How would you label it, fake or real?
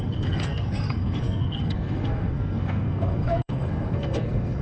fake